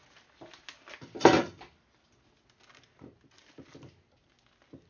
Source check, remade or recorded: recorded